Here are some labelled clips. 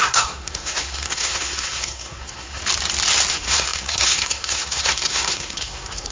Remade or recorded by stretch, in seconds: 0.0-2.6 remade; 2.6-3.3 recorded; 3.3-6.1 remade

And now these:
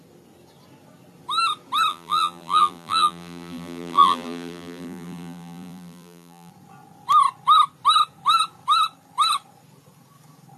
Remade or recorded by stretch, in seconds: 0.0-1.9 recorded; 1.9-6.5 remade; 6.5-10.6 recorded